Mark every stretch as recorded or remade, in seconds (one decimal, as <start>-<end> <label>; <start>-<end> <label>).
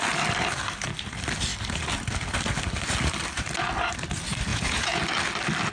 0.0-4.5 recorded; 4.5-5.0 remade; 5.0-5.7 recorded